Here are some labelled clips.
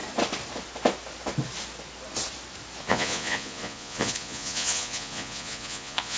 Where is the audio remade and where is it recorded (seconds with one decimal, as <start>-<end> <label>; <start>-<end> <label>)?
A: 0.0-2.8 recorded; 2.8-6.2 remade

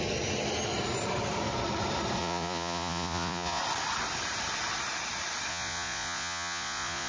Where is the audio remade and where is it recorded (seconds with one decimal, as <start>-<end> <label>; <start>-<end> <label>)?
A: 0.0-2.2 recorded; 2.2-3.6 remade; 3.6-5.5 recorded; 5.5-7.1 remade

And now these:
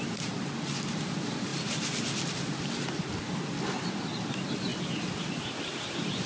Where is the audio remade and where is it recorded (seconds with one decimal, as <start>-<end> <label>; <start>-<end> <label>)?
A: 0.0-6.3 recorded

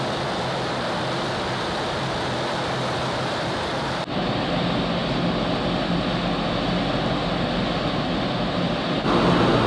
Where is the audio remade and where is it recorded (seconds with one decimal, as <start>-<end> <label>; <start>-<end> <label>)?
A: 0.0-9.7 recorded

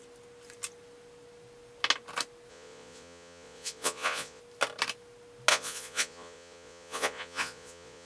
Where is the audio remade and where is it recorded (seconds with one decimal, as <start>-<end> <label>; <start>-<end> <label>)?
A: 0.0-2.5 recorded; 2.5-4.4 remade; 4.4-5.5 recorded; 5.5-8.1 remade

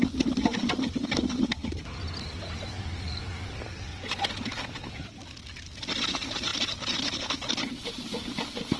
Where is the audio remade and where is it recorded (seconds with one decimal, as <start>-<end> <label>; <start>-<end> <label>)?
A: 0.0-3.9 recorded; 3.9-4.4 remade; 4.4-8.8 recorded